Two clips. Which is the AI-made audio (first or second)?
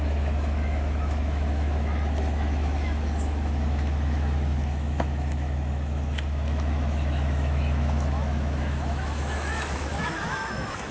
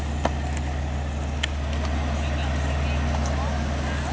first